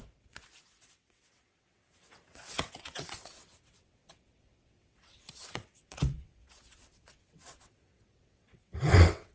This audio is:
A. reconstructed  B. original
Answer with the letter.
A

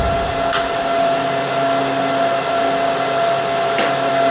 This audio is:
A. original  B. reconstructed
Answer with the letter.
A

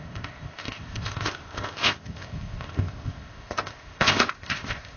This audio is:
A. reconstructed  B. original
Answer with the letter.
A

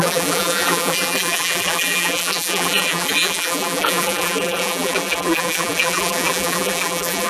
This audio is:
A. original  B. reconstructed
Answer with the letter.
B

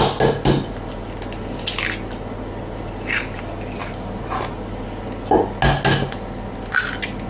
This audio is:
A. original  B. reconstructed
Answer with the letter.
A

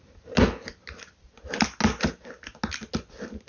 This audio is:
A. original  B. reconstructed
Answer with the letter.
A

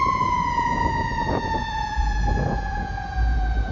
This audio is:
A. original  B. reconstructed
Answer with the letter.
B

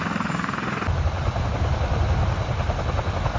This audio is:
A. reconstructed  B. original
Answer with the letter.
B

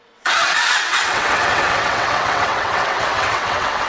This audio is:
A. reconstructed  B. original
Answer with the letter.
A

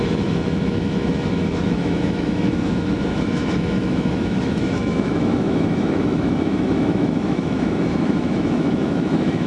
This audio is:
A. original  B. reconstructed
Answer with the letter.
B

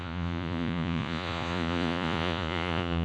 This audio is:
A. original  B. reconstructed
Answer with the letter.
B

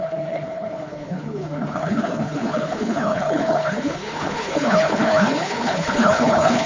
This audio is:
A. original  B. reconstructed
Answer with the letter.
B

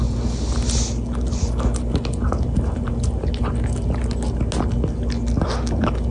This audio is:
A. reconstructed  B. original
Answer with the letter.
B